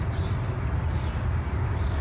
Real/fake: real